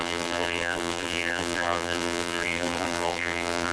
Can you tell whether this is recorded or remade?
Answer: remade